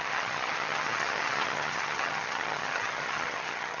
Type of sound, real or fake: fake